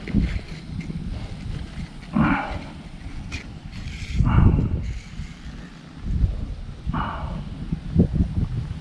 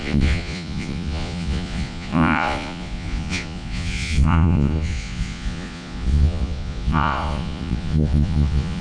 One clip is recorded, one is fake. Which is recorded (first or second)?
first